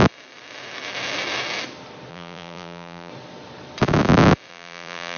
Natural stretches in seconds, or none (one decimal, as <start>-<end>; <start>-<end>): 0.0-2.1; 3.1-4.5

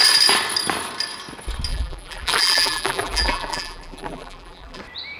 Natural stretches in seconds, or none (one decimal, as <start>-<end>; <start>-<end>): 0.0-1.7; 4.8-5.2

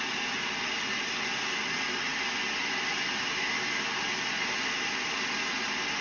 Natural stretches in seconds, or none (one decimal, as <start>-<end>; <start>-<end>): 2.1-6.0

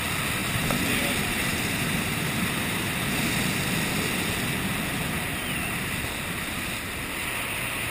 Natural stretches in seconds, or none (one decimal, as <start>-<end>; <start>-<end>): 0.0-0.4; 3.5-7.9

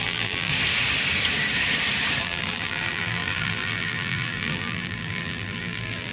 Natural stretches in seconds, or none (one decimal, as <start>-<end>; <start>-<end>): 0.5-2.2

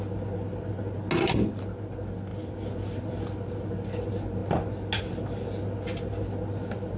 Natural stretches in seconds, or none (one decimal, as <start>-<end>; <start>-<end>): 0.0-2.3; 3.5-7.0

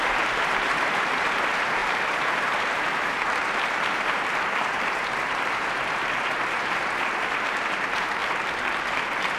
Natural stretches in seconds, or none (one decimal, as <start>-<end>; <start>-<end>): 8.2-9.4